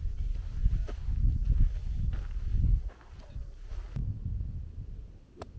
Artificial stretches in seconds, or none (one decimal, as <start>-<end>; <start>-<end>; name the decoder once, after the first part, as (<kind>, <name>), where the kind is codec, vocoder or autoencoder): 4.0-4.9 (vocoder, BigVGAN v2)